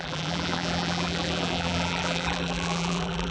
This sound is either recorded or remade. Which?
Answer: remade